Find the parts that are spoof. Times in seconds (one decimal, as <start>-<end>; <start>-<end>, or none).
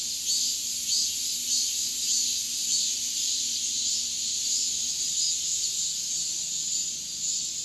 1.4-5.2